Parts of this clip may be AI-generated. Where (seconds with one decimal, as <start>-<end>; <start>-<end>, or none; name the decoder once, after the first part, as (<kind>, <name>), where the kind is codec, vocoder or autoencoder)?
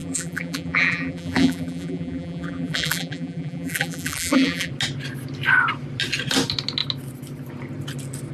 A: 0.0-4.7 (vocoder, BigVGAN v2)